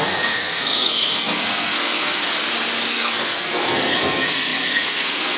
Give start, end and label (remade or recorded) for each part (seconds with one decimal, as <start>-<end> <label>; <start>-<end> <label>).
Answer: 0.0-2.2 remade; 2.2-2.9 recorded; 2.9-5.4 remade